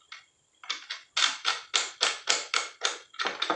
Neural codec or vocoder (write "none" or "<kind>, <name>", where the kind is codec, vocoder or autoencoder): none